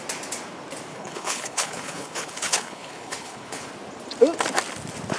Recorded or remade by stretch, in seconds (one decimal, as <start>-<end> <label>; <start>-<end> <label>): 0.0-0.9 recorded; 0.9-3.7 remade; 3.7-5.2 recorded